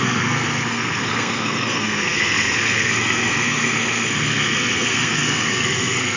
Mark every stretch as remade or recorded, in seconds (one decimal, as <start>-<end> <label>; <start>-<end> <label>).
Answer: 0.0-6.2 remade